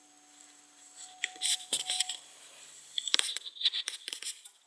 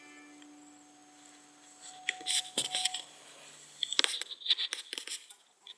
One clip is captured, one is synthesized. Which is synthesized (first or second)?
first